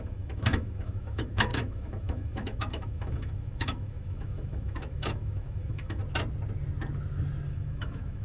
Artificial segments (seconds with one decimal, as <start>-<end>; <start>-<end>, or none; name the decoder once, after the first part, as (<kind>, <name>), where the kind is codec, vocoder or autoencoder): 0.0-6.0 (autoencoder, DAC-VAE); 7.5-8.2